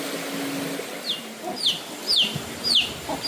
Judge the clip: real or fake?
real